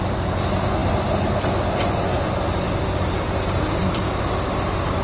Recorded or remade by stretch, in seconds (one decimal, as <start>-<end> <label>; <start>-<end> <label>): 0.0-5.0 recorded